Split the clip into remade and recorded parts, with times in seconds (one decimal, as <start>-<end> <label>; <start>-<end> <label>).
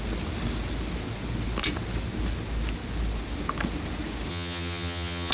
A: 0.0-4.3 recorded; 4.3-5.3 remade